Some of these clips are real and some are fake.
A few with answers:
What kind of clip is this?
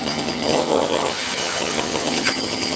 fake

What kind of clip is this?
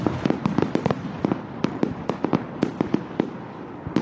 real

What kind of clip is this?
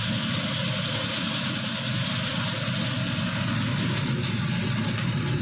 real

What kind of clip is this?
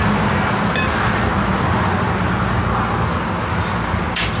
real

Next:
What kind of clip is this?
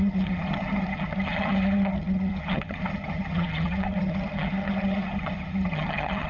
fake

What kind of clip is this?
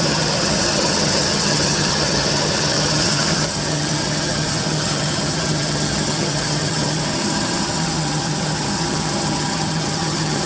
fake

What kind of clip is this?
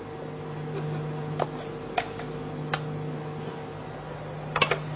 real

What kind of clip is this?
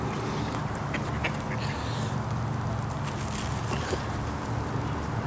real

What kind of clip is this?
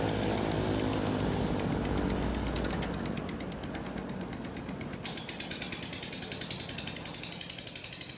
real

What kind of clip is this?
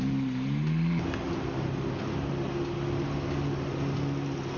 real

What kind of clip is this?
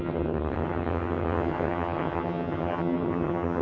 fake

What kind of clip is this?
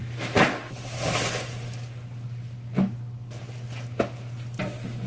real